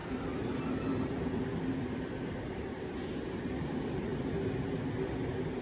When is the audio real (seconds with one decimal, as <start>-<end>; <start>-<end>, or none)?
4.1-5.6